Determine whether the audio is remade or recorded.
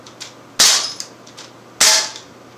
recorded